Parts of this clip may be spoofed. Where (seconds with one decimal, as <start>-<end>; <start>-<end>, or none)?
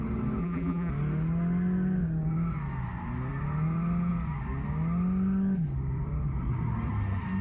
0.4-0.9